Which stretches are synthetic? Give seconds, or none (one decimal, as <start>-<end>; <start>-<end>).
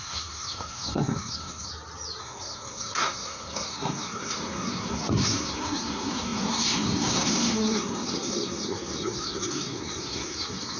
0.0-1.7; 2.2-10.8